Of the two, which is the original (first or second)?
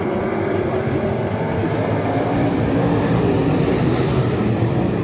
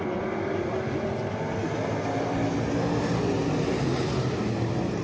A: second